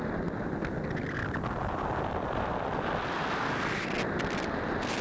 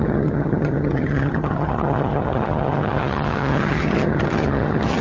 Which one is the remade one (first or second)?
second